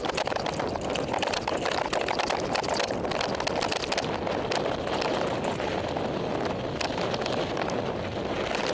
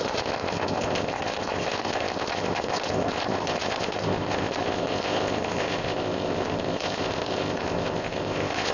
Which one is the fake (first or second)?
second